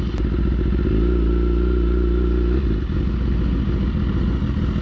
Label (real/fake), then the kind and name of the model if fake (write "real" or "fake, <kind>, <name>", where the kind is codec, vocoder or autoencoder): real